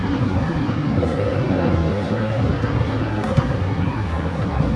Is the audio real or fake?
fake